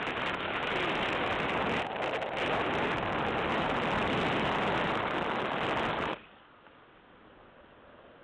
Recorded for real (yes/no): yes